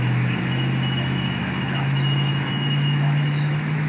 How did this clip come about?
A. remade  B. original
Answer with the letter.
A